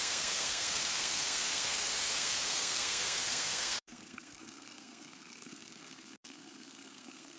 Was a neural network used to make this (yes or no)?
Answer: yes